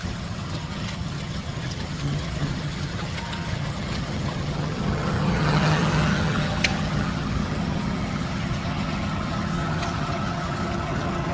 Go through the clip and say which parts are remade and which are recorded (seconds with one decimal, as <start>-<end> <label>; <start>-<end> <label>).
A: 0.0-11.3 remade